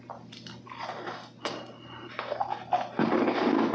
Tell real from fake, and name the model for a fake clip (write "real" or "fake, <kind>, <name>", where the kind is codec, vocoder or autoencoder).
real